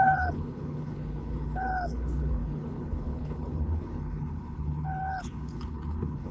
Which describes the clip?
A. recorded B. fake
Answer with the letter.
B